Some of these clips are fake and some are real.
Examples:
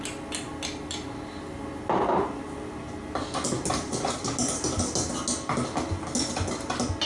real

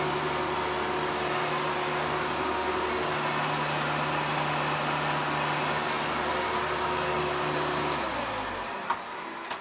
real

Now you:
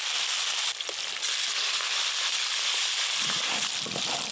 real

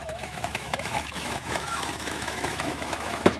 fake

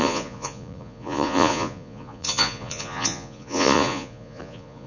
fake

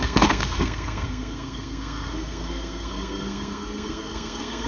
fake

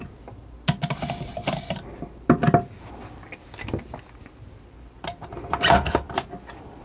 real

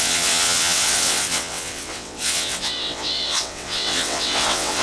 fake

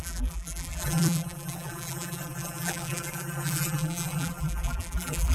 fake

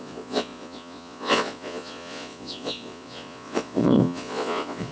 fake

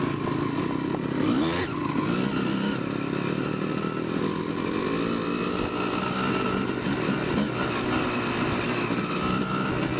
real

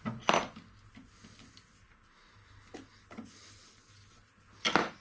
real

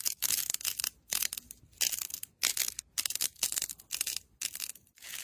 real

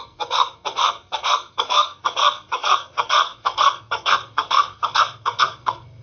fake